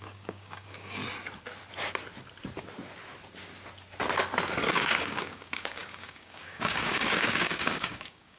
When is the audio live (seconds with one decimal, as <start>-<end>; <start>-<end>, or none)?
1.0-4.7